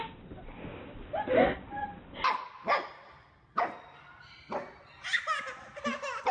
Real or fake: real